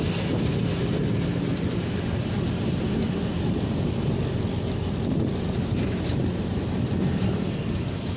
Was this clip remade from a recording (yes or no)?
no